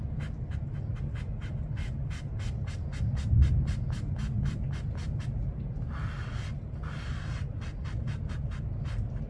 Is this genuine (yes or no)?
yes